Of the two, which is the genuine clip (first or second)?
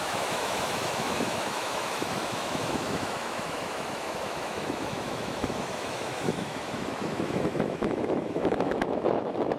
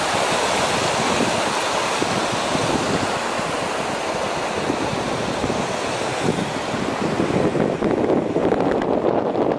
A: second